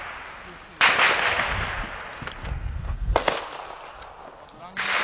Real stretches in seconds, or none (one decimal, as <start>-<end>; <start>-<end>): 0.0-2.4; 3.4-5.0